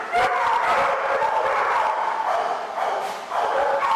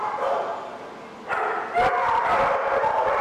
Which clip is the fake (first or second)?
first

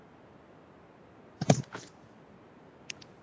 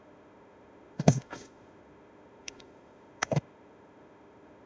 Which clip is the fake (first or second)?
second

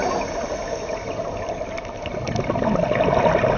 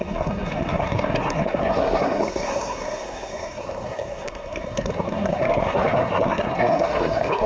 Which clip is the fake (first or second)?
second